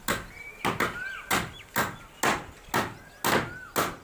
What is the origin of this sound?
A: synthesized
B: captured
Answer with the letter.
B